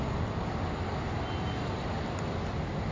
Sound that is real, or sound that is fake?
real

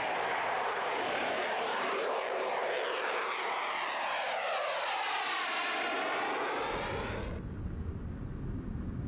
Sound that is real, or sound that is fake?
real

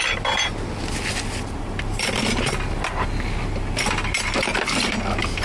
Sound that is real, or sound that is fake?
real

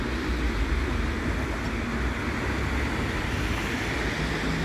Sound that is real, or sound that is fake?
real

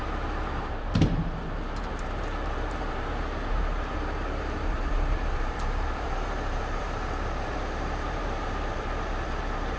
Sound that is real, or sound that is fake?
fake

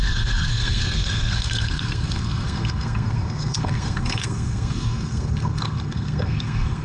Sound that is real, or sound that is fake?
fake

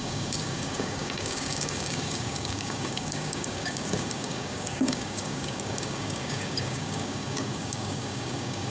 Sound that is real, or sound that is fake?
fake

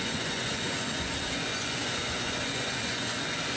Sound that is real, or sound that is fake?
fake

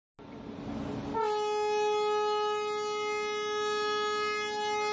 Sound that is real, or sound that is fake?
real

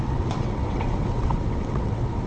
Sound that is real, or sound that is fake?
fake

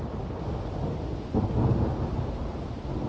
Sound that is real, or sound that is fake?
real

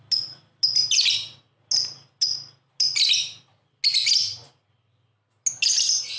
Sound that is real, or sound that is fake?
real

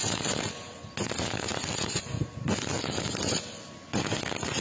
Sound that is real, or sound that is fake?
real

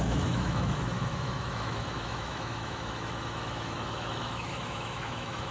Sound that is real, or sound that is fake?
fake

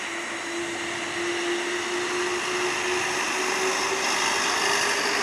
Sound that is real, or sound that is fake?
real